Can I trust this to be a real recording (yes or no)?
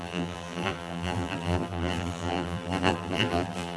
no